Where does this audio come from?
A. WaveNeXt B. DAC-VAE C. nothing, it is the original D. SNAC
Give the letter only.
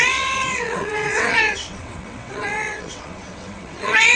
A